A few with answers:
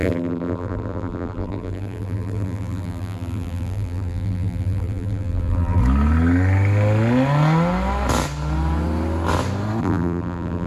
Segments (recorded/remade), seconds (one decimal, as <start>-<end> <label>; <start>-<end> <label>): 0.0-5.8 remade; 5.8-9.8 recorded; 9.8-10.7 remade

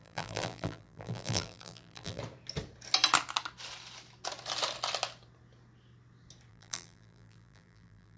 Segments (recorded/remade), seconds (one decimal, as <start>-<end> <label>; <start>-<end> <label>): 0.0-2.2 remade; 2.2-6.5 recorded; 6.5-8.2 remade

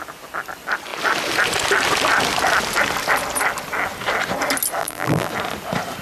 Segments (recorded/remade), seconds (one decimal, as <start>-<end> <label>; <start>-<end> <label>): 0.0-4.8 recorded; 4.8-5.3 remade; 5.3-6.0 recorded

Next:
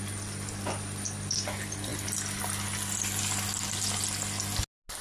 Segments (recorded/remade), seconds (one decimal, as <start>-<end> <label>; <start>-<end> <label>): 0.0-1.9 remade; 1.9-5.0 recorded

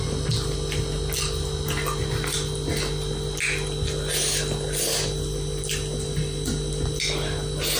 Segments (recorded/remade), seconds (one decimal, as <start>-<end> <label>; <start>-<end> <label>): 0.0-7.8 recorded

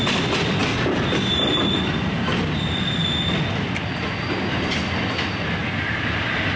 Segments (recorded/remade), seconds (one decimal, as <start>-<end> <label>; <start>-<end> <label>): 0.0-6.6 recorded